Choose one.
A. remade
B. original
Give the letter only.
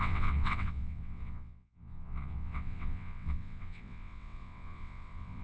A